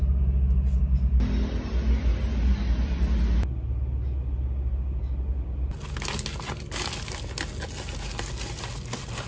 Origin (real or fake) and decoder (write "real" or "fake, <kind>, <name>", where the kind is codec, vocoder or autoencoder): real